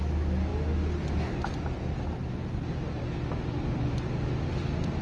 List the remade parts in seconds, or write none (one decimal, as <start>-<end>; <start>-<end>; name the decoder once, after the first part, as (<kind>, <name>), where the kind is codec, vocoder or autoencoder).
none